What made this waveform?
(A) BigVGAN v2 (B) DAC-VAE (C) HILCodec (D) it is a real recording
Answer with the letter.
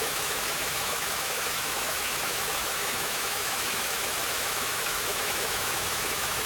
B